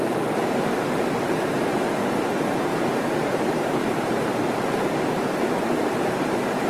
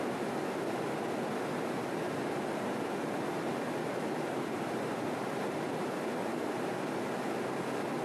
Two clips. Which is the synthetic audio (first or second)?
first